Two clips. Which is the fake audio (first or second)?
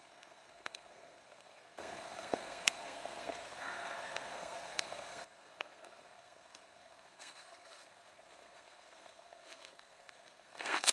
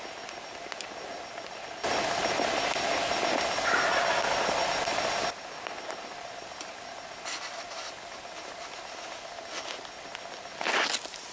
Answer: first